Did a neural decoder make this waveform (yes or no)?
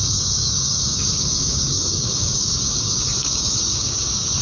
yes